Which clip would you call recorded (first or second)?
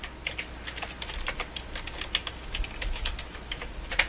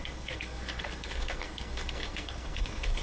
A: first